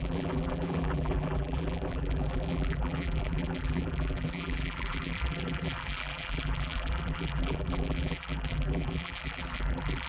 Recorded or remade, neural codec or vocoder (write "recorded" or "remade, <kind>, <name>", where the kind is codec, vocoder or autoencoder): remade, vocoder, BigVGAN v2